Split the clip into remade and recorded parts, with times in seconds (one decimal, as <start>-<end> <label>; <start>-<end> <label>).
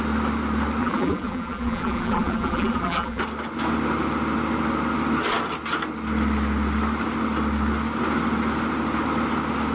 0.0-0.8 recorded; 0.8-3.2 remade; 3.2-9.7 recorded